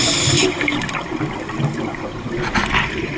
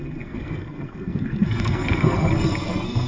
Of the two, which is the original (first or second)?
first